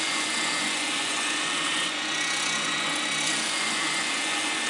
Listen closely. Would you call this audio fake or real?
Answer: fake